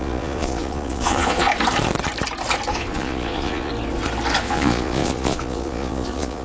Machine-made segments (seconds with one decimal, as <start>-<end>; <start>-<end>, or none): 0.0-1.5; 2.7-3.7; 4.4-6.4